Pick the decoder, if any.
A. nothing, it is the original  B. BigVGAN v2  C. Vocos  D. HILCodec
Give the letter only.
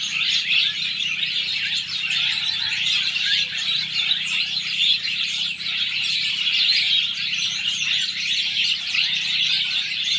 B